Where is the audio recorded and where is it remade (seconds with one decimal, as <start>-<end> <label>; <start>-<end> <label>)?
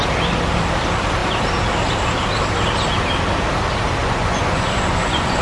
0.0-4.0 recorded; 4.0-5.4 remade